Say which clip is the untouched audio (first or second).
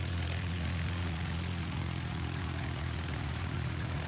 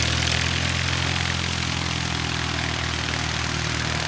second